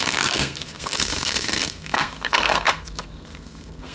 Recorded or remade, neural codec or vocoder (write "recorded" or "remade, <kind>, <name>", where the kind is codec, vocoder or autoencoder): remade, codec, SNAC